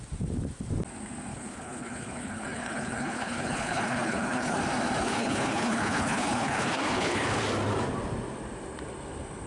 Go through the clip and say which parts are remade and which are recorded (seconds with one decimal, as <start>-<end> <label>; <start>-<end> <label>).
0.0-1.3 recorded; 1.3-4.6 remade; 4.6-5.0 recorded; 5.0-7.4 remade; 7.4-9.5 recorded

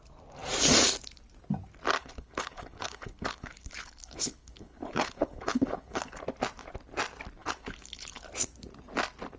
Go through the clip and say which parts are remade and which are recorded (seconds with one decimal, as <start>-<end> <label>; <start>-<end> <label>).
0.0-2.0 recorded; 2.0-6.2 remade; 6.2-7.4 recorded; 7.4-8.2 remade; 8.2-9.4 recorded

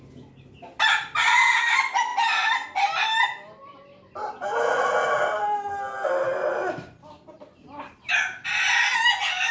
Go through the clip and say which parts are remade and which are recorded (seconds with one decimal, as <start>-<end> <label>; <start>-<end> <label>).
0.0-9.5 recorded

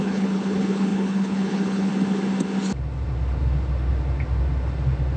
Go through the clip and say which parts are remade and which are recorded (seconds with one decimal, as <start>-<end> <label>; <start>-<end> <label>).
0.0-1.9 remade; 1.9-5.2 recorded

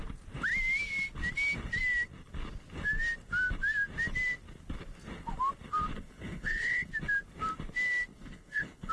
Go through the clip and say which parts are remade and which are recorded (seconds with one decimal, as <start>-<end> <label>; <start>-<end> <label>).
0.0-5.9 recorded; 5.9-6.9 remade; 6.9-8.1 recorded; 8.1-8.9 remade

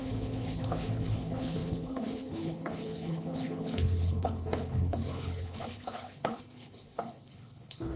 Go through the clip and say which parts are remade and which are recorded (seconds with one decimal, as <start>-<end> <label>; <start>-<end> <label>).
0.0-8.0 remade

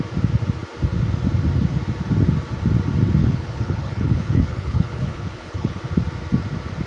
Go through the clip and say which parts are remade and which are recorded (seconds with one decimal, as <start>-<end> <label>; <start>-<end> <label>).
0.0-3.2 recorded; 3.2-5.8 remade; 5.8-6.9 recorded

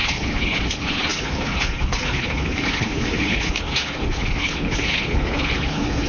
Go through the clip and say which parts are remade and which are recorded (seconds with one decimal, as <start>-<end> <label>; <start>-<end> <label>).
0.0-6.1 remade